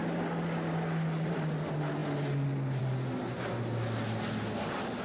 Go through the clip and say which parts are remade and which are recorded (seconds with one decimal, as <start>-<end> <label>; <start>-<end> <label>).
0.0-5.0 recorded